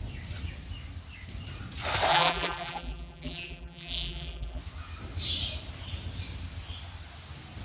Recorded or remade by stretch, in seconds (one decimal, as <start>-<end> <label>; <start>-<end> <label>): 0.0-2.1 recorded; 2.1-4.6 remade; 4.6-7.6 recorded

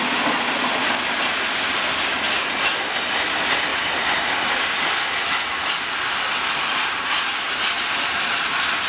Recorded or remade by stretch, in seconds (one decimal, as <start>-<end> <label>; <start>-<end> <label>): 0.0-3.7 recorded; 3.7-4.9 remade; 4.9-8.9 recorded

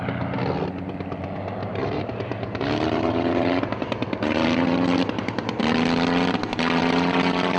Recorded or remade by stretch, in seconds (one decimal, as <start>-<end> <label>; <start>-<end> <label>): 0.0-1.6 recorded; 1.6-5.6 remade; 5.6-6.8 recorded; 6.8-7.6 remade

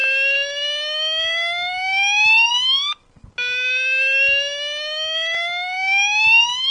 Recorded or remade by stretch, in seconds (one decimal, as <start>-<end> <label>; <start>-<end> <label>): 0.0-6.7 recorded

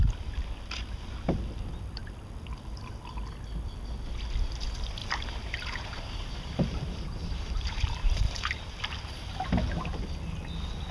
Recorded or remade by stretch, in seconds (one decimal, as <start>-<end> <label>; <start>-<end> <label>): 0.0-5.0 recorded; 5.0-8.7 remade; 8.7-10.9 recorded

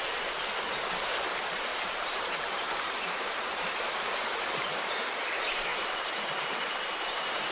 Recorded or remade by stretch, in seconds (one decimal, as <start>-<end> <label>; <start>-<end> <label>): 0.0-1.7 recorded; 1.7-5.2 remade; 5.2-5.7 recorded; 5.7-6.9 remade; 6.9-7.5 recorded

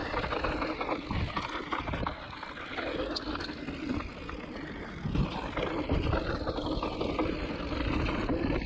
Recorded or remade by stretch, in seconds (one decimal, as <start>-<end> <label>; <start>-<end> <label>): 0.0-8.7 recorded

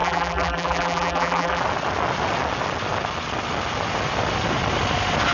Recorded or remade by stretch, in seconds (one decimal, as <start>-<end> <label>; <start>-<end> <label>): 0.0-1.6 remade; 1.6-5.3 recorded